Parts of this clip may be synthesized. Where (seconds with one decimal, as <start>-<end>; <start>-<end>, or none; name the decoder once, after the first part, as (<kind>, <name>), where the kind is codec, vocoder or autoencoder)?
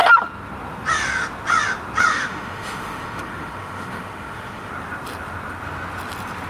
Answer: 2.1-4.7 (autoencoder, DAC-VAE)